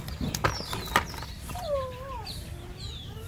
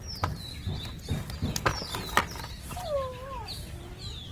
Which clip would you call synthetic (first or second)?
first